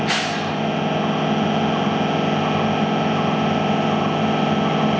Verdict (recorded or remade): recorded